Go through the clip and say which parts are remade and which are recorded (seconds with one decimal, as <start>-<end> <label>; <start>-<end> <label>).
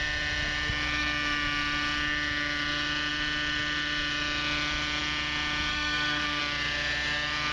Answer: 0.0-5.7 recorded; 5.7-6.4 remade; 6.4-7.5 recorded